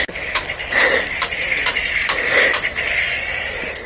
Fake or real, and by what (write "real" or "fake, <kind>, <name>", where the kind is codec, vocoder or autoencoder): real